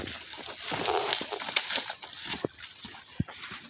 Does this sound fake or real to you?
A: real